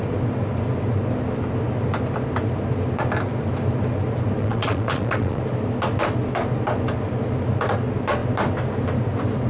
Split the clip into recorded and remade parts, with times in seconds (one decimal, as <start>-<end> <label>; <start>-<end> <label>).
0.0-4.4 recorded; 4.4-5.4 remade; 5.4-9.5 recorded

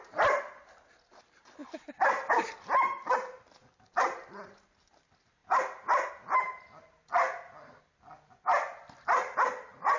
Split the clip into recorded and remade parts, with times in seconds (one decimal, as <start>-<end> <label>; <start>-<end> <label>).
0.0-10.0 recorded

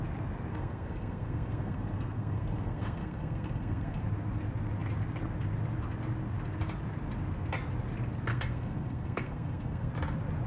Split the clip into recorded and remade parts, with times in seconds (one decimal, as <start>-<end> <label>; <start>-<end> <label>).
0.0-0.5 recorded; 0.5-4.0 remade; 4.0-8.3 recorded; 8.3-9.9 remade; 9.9-10.5 recorded

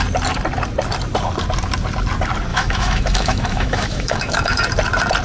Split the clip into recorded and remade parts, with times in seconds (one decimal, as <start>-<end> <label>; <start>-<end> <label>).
0.0-2.5 recorded; 2.5-4.6 remade; 4.6-5.2 recorded

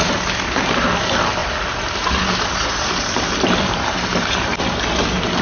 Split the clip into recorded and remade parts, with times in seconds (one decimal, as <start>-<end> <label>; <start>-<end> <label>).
0.0-1.4 recorded; 1.4-4.6 remade; 4.6-5.4 recorded

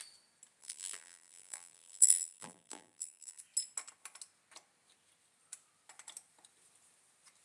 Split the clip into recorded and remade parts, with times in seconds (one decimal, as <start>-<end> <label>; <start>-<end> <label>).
0.0-0.6 recorded; 0.6-3.4 remade; 3.4-7.4 recorded

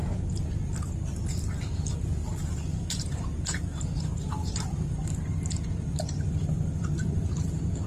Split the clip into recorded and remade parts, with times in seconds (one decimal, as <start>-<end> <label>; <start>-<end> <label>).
0.0-2.7 recorded; 2.7-7.3 remade; 7.3-7.9 recorded

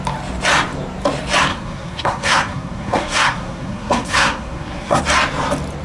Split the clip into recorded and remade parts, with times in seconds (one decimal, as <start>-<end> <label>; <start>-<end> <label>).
0.0-1.5 recorded; 1.5-5.0 remade; 5.0-5.8 recorded